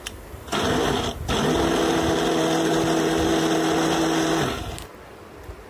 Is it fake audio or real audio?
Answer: real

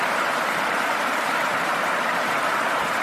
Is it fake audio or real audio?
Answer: fake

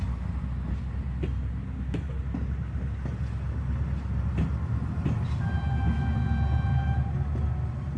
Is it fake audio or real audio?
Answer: real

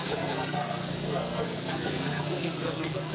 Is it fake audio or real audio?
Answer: fake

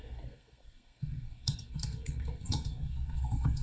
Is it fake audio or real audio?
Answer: fake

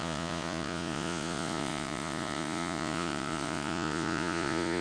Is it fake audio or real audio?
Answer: fake